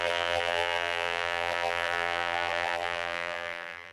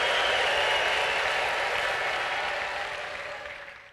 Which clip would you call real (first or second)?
second